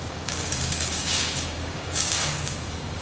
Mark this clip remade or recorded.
remade